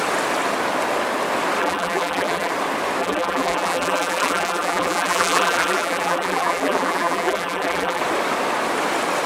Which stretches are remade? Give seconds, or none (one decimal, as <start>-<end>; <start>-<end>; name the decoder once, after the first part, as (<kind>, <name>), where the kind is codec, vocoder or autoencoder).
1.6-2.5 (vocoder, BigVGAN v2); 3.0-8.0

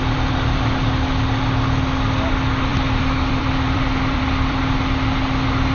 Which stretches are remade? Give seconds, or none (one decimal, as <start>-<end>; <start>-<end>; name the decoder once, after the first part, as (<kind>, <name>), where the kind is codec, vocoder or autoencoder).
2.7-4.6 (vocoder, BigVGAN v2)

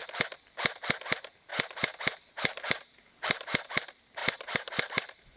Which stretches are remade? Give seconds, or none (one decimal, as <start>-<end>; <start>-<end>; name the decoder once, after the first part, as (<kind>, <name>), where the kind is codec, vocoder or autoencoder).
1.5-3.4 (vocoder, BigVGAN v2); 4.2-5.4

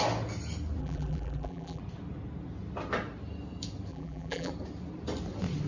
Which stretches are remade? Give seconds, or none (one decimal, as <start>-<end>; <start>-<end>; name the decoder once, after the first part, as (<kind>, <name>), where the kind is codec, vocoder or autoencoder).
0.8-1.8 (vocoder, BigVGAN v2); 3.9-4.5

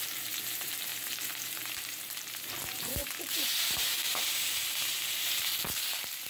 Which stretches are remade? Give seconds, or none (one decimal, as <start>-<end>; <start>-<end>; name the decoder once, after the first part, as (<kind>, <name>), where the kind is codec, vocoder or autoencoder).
0.0-5.5 (vocoder, BigVGAN v2)

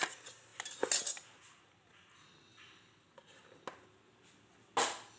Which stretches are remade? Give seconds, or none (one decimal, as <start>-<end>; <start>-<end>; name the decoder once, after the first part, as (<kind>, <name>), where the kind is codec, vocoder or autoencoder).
none

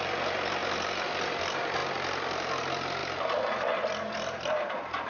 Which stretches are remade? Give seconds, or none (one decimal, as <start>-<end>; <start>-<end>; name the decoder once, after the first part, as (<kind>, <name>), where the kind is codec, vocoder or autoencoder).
0.0-1.8 (vocoder, BigVGAN v2); 2.6-3.0; 4.4-5.1

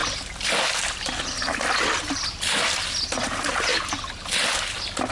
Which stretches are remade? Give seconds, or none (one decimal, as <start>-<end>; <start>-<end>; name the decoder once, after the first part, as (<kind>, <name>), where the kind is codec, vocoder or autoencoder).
3.7-4.6 (vocoder, BigVGAN v2)